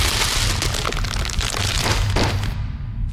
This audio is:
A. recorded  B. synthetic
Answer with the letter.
A